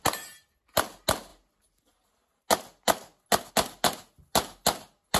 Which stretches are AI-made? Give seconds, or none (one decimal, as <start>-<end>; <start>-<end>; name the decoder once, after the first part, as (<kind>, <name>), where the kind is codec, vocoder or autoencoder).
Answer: none